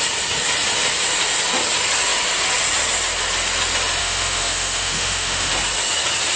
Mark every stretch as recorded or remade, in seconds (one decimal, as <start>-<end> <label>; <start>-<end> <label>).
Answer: 0.0-4.0 recorded; 4.0-5.5 remade; 5.5-6.4 recorded